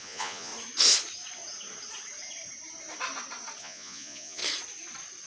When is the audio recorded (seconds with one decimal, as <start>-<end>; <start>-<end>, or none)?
0.5-3.6; 4.4-5.3